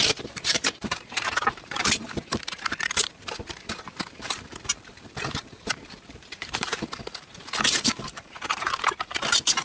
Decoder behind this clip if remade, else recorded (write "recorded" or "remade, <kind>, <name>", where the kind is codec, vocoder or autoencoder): remade, vocoder, BigVGAN v2